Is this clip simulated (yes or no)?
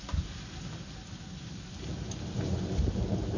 no